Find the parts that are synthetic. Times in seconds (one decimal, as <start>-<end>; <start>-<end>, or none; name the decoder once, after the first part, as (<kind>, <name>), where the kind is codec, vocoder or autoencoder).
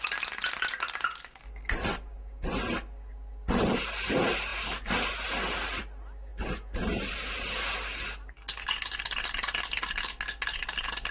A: none